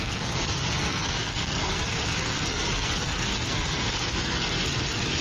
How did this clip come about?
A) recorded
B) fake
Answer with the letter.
B